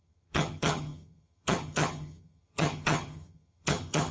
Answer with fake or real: fake